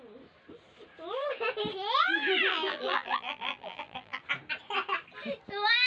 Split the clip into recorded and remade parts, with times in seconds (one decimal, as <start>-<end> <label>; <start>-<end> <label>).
0.0-2.5 recorded; 2.5-4.2 remade; 4.2-5.9 recorded